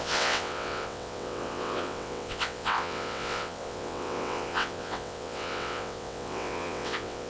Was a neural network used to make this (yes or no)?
yes